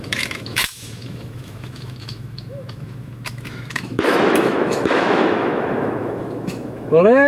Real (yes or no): no